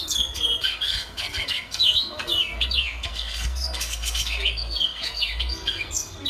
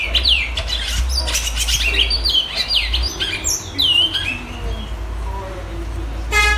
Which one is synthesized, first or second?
first